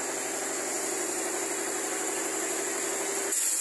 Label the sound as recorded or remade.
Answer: recorded